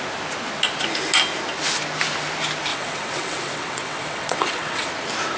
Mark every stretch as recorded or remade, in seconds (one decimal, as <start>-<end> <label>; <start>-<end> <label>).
0.0-2.7 recorded; 2.7-4.9 remade; 4.9-5.4 recorded